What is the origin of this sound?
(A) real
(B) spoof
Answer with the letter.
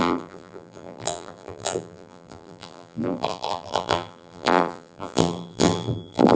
B